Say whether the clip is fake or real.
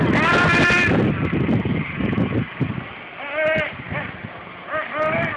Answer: real